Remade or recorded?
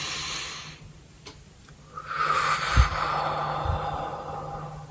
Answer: recorded